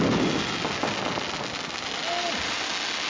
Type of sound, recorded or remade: recorded